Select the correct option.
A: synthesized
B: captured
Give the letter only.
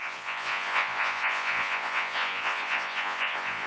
A